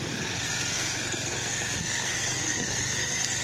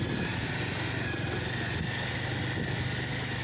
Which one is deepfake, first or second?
first